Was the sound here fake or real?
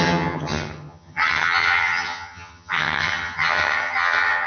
fake